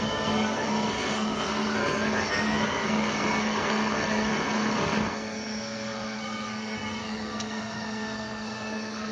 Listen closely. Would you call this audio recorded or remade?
remade